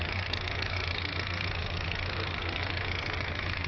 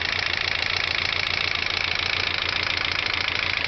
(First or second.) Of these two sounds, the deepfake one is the first